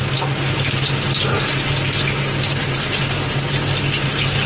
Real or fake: real